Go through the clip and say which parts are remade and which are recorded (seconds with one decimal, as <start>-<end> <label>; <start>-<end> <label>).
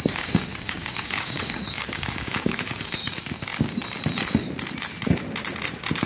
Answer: 0.0-3.5 remade; 3.5-6.1 recorded